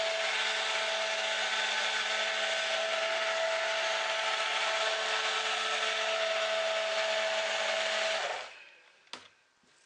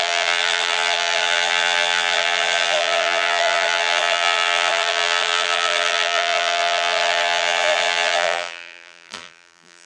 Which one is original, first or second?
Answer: first